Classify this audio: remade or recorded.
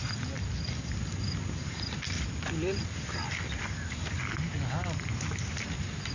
recorded